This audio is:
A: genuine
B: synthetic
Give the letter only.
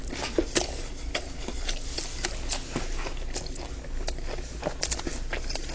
A